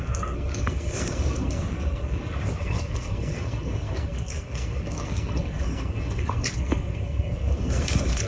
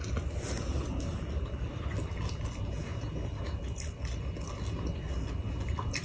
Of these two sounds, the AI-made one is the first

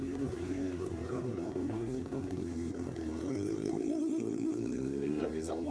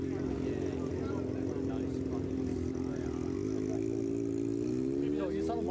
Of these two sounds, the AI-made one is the first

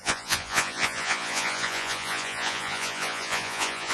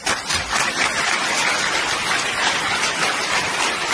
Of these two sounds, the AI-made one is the first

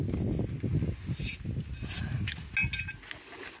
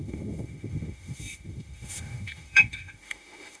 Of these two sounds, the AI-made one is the second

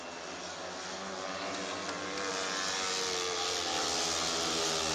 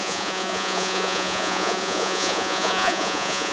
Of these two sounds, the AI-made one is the second